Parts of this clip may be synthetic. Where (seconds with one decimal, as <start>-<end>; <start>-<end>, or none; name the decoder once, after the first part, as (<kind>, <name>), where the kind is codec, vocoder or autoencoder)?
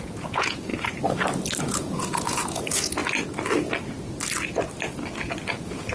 0.0-0.7 (vocoder, Vocos); 1.6-3.0; 5.5-5.9